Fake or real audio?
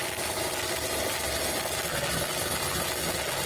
real